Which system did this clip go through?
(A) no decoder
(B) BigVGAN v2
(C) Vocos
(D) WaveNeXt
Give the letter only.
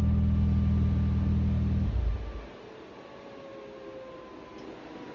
A